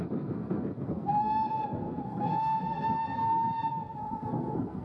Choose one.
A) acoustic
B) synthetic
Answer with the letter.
B